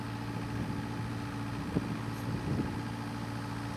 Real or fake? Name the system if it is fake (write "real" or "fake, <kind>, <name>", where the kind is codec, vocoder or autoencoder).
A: real